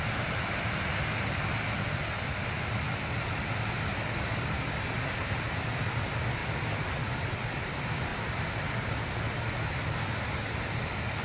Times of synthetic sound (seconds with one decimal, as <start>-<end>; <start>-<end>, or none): none